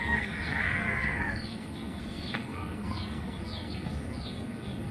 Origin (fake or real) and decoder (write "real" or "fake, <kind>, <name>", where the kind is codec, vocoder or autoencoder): fake, codec, SNAC